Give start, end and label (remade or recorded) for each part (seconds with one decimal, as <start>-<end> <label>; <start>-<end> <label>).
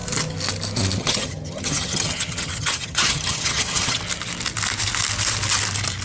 0.0-1.0 recorded; 1.0-4.0 remade; 4.0-6.0 recorded